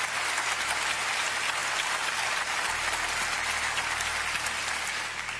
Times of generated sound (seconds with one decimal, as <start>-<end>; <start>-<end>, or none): none